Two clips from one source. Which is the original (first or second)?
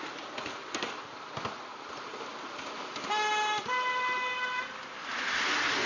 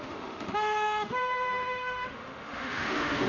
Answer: first